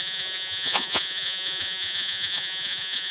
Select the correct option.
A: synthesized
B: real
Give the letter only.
A